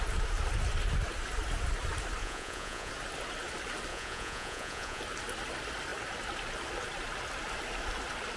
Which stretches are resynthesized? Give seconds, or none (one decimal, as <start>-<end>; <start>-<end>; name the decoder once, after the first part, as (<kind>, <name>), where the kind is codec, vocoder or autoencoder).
2.2-2.9 (vocoder, Vocos); 3.9-5.0